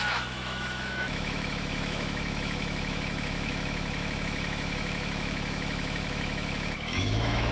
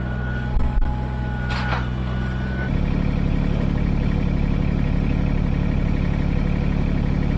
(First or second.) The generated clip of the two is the first